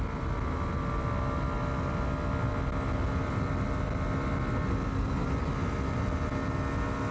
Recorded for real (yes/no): yes